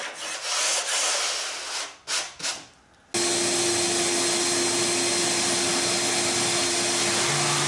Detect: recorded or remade recorded